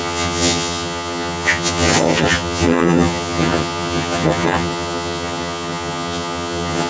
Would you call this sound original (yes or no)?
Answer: no